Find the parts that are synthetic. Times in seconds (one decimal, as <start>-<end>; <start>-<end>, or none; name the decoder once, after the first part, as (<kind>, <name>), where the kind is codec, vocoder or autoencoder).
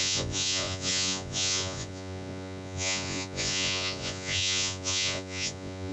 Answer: 0.0-5.9 (vocoder, Vocos)